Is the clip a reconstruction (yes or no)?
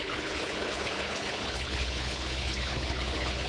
yes